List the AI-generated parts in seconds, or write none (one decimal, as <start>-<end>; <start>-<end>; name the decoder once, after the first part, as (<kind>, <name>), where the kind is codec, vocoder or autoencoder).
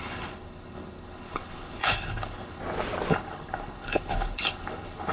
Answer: 0.0-2.6 (codec, HILCodec); 3.1-5.1